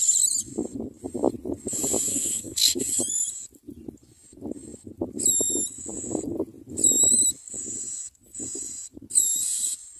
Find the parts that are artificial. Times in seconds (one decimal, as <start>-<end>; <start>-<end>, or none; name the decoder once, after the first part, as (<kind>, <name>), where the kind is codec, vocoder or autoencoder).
2.1-3.0 (codec, SNAC)

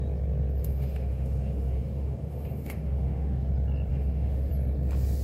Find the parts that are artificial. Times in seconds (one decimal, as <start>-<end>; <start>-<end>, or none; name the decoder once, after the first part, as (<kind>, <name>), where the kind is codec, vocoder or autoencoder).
0.6-3.5 (autoencoder, DAC-VAE); 3.9-4.5

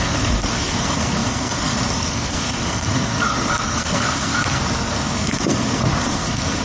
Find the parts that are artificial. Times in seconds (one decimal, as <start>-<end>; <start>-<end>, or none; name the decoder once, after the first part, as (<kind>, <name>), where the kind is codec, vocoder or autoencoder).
0.0-6.6 (codec, SNAC)

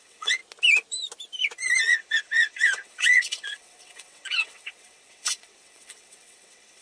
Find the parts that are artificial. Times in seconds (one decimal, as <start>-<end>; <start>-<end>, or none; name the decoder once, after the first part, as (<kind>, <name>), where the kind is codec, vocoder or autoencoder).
0.0-0.4 (vocoder, WaveNeXt); 1.8-6.8

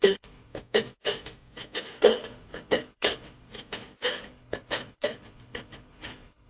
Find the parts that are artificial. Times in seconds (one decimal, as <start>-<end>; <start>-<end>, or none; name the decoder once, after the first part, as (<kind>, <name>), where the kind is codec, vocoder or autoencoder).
0.0-0.5 (codec, HILCodec); 2.0-3.5; 4.1-6.5

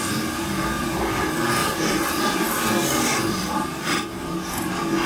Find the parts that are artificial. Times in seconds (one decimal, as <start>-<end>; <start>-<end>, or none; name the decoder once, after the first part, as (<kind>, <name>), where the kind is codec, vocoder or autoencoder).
1.6-2.2 (vocoder, BigVGAN v2); 2.8-3.9